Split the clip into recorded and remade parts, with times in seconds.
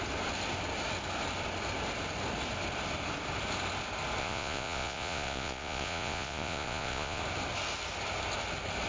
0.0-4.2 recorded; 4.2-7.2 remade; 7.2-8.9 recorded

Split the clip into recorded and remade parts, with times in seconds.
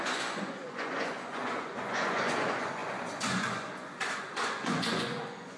0.0-5.6 remade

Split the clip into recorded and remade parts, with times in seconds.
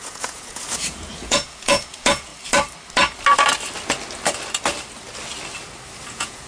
0.0-2.3 remade; 2.3-6.1 recorded; 6.1-6.5 remade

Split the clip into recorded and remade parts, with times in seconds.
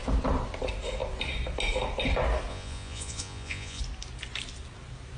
0.0-2.5 recorded; 2.5-3.8 remade; 3.8-5.2 recorded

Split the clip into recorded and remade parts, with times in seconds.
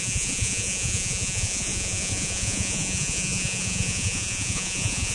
0.0-5.1 remade